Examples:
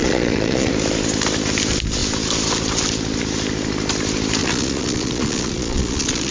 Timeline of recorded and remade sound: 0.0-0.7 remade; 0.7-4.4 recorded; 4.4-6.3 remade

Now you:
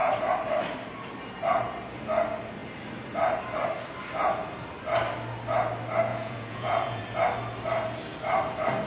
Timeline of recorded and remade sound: 0.0-6.1 recorded; 6.1-7.0 remade; 7.0-8.9 recorded

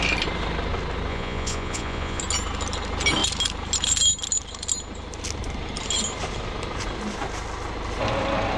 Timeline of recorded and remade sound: 0.0-1.1 recorded; 1.1-2.2 remade; 2.2-8.6 recorded

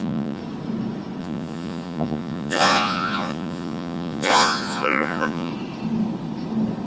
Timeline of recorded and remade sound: 0.0-0.4 remade; 0.4-1.2 recorded; 1.2-5.5 remade; 5.5-6.9 recorded

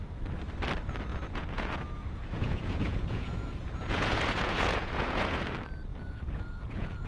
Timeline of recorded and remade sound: 0.0-1.1 recorded; 1.1-5.4 remade; 5.4-5.9 recorded; 5.9-7.1 remade

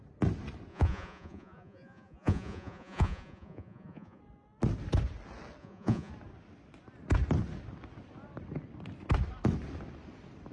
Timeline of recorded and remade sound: 0.0-0.7 recorded; 0.7-4.2 remade; 4.2-5.6 recorded; 5.6-6.1 remade; 6.1-10.5 recorded